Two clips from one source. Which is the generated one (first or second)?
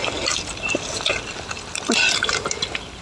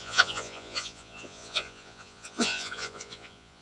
second